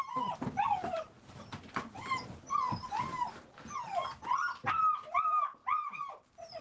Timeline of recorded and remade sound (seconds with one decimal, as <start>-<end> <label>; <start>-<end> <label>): 0.0-6.6 recorded